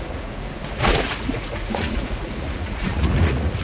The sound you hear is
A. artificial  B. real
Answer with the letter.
A